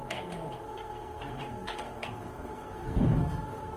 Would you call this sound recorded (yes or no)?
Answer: no